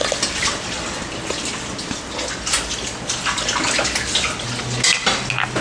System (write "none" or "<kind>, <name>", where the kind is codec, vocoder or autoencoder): none